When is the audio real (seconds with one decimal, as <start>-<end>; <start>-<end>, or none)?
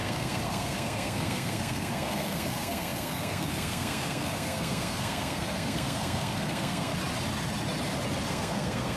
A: 6.9-8.3